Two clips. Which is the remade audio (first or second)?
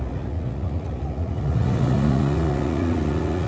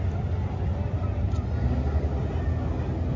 first